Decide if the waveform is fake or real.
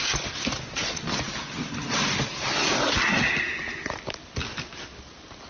real